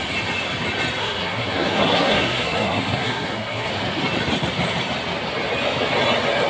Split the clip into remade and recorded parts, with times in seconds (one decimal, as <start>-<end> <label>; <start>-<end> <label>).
0.0-1.0 recorded; 1.0-3.7 remade; 3.7-6.5 recorded